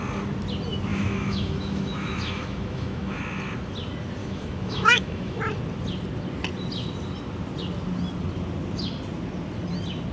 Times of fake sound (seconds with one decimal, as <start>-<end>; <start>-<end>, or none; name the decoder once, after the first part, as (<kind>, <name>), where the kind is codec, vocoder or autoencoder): 0.9-3.2 (autoencoder, DAC-VAE); 4.2-5.4